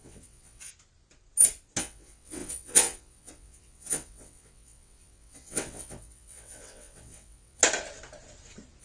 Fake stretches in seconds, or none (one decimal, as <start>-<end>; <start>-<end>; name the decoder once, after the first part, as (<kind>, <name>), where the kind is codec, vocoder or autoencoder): 0.0-0.7 (vocoder, WaveNeXt); 1.8-7.6